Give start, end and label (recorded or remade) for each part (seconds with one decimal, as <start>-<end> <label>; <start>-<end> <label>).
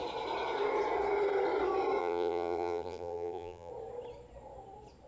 0.0-2.0 recorded; 2.0-3.7 remade; 3.7-5.1 recorded